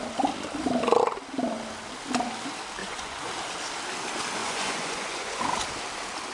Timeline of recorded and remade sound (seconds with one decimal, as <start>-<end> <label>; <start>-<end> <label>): 0.0-2.8 recorded; 2.8-3.3 remade; 3.3-4.4 recorded; 4.4-5.4 remade; 5.4-6.3 recorded